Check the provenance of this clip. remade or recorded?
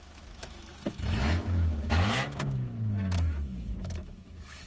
remade